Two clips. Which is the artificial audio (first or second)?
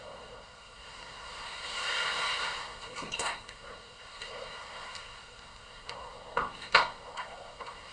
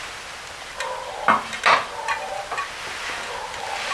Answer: first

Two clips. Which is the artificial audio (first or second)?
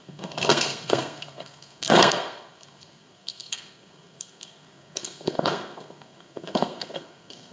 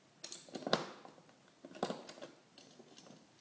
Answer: first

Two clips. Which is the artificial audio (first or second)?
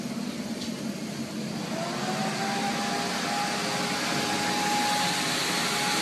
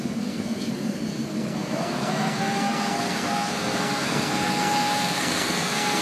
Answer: second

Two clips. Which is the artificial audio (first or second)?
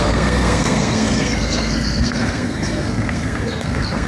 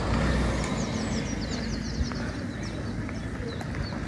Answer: first